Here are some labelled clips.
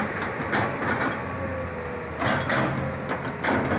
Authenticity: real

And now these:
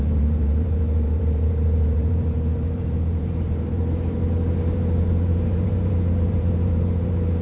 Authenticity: fake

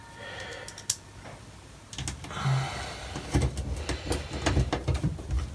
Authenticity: real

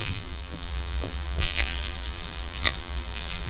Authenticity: fake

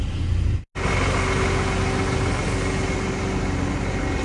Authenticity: real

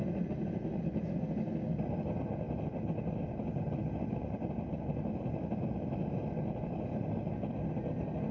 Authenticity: real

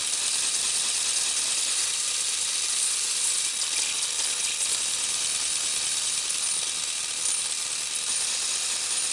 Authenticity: real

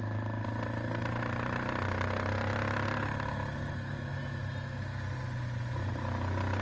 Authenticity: real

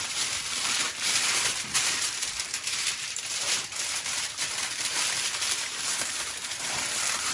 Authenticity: fake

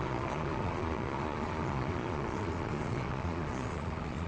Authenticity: fake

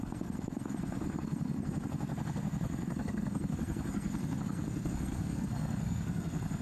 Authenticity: fake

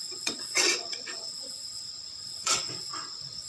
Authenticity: fake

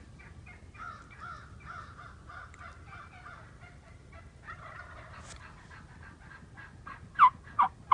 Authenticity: real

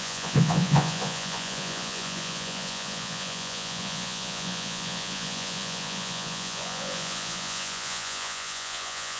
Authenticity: fake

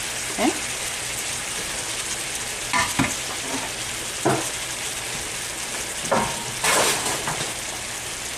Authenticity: real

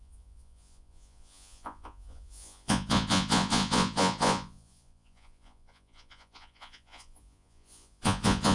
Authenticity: fake